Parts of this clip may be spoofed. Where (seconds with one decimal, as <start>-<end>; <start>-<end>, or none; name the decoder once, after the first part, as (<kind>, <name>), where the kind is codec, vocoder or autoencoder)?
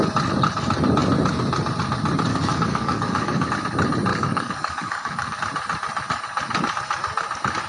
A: 2.3-3.5 (codec, DAC); 4.1-5.4